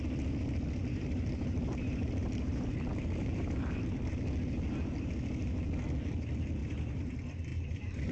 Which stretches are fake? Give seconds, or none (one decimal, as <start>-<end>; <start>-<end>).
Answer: 0.8-3.9; 6.6-7.1; 7.5-8.1